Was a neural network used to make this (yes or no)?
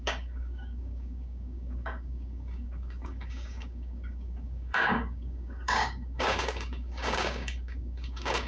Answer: yes